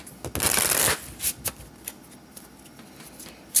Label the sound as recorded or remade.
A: recorded